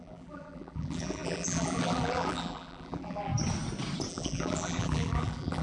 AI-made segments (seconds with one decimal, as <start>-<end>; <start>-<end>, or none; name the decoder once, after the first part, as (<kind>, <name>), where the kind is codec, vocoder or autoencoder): 0.0-3.3 (vocoder, BigVGAN v2); 4.1-5.6